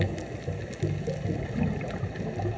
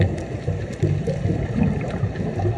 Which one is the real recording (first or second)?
first